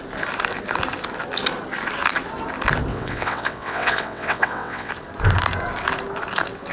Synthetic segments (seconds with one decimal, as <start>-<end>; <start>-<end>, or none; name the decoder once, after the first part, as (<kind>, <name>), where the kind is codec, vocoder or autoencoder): 2.9-4.9 (vocoder, WaveNeXt)